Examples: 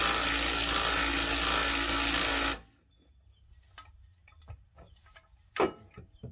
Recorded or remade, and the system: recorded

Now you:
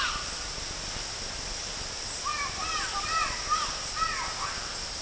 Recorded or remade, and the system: recorded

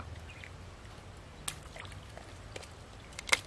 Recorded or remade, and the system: recorded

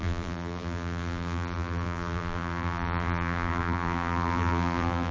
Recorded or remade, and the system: remade, vocoder, BigVGAN v2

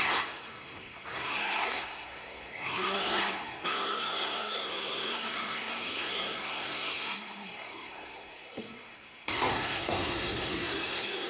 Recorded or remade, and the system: remade, codec, SNAC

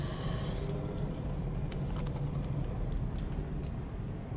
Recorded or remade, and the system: recorded